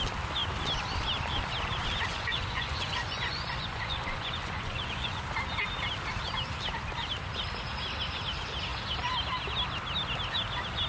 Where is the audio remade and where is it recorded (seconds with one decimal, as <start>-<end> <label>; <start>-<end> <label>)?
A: 0.0-2.1 recorded; 2.1-5.2 remade; 5.2-10.9 recorded